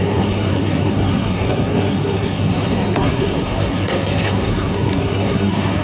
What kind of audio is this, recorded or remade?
remade